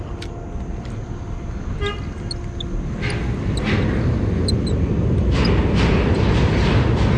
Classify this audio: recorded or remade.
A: recorded